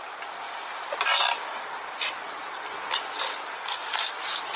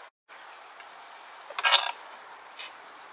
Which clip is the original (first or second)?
second